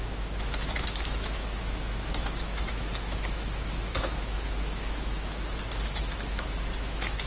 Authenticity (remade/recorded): remade